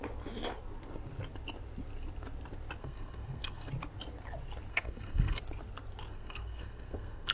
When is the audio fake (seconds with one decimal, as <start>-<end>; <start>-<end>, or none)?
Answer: 2.8-3.7; 4.7-5.4; 6.1-7.3